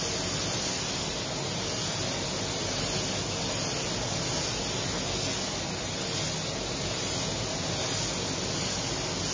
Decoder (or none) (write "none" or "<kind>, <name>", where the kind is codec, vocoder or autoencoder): none